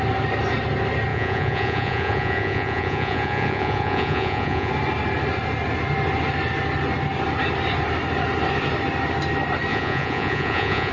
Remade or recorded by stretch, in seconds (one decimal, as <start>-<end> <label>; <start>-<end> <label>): 0.0-1.1 recorded; 1.1-4.7 remade; 4.7-9.7 recorded; 9.7-10.9 remade